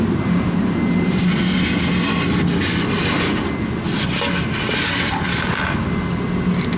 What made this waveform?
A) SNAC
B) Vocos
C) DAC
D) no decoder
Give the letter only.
D